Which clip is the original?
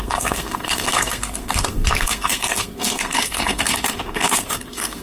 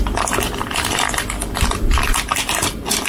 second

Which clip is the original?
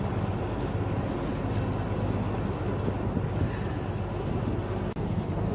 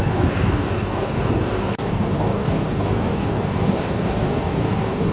first